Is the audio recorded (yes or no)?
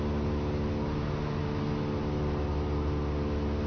yes